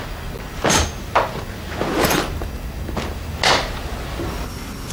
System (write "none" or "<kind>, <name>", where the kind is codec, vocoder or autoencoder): none